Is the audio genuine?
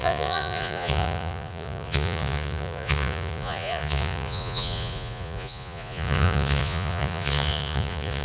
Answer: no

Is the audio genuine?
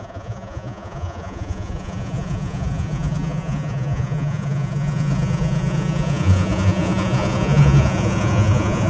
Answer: no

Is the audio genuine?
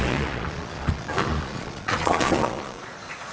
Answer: no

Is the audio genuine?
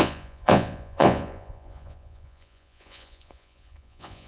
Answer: no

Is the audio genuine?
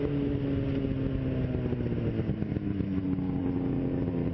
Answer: yes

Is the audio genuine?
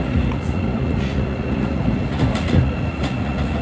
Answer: no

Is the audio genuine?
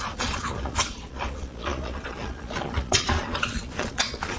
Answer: no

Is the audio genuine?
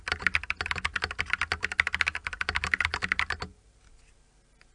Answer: yes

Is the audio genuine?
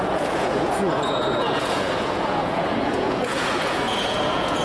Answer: no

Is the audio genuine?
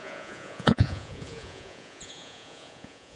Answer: no